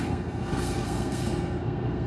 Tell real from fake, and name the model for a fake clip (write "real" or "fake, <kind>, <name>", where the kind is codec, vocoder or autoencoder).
fake, codec, SNAC